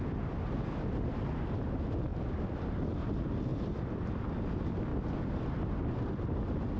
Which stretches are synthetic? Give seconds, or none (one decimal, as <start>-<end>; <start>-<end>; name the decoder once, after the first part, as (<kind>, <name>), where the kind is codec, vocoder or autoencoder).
2.1-2.7 (vocoder, BigVGAN v2); 3.5-4.4; 4.9-6.2